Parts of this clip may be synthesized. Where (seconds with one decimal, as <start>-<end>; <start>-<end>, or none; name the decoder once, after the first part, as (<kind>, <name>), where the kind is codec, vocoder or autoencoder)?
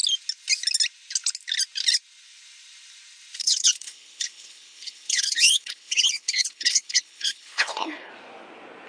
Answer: 3.4-8.1 (codec, HILCodec)